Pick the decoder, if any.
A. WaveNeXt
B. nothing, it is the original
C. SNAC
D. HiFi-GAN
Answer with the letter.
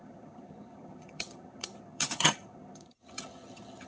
D